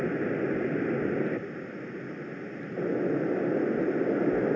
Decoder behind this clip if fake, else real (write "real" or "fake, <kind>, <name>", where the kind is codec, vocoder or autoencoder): real